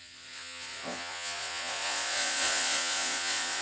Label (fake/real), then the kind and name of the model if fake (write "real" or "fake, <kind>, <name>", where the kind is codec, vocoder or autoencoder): fake, vocoder, Vocos